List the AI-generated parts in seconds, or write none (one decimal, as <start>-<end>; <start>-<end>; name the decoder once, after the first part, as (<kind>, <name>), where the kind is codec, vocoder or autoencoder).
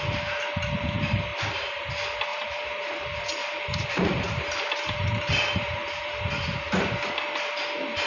2.3-2.8 (vocoder, BigVGAN v2); 3.4-6.3